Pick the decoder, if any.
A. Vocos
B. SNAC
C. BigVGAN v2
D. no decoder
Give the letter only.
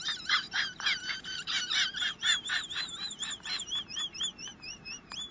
C